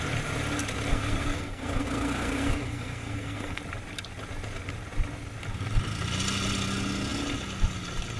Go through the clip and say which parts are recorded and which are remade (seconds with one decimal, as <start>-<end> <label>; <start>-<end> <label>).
0.0-0.9 recorded; 0.9-3.6 remade; 3.6-8.2 recorded